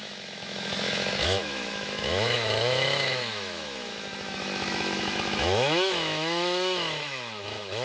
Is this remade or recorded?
remade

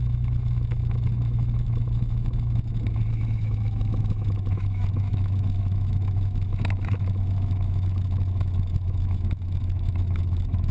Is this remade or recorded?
remade